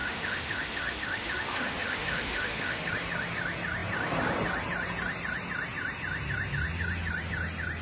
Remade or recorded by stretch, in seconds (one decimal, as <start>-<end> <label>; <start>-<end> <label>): 0.0-2.9 remade; 2.9-7.8 recorded